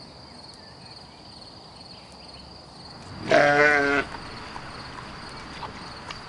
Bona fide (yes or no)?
yes